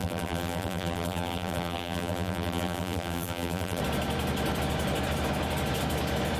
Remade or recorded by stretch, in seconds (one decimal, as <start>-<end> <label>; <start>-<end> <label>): 0.0-3.8 remade; 3.8-6.4 recorded